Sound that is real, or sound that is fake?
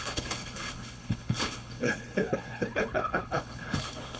fake